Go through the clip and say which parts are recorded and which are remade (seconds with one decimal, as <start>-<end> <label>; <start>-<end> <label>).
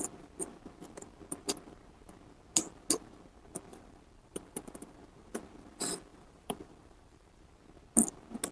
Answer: 0.0-3.7 recorded; 3.7-5.0 remade; 5.0-6.1 recorded; 6.1-7.4 remade; 7.4-8.5 recorded